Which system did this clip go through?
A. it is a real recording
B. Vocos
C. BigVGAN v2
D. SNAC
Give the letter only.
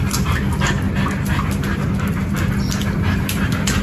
A